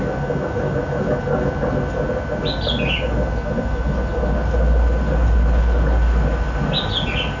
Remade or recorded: recorded